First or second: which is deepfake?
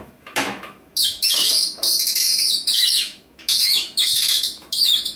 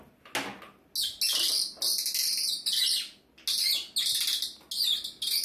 first